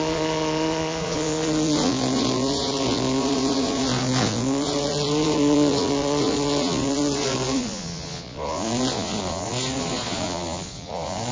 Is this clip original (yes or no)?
no